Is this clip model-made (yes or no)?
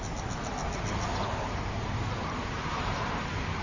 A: no